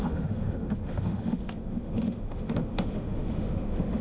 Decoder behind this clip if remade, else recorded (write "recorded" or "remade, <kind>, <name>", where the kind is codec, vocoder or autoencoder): remade, autoencoder, DAC-VAE